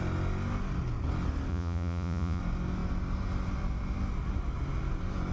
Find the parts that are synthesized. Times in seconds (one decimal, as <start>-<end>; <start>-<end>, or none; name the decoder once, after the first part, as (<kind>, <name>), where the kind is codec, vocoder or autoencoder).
1.5-2.4 (vocoder, Vocos)